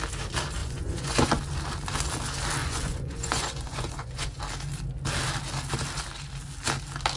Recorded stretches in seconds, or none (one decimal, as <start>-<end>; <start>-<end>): 0.0-0.6; 1.4-2.6; 4.4-7.2